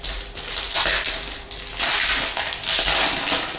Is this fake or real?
real